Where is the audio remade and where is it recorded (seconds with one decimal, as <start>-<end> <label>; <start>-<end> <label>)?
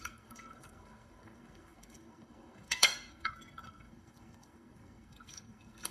0.0-5.9 remade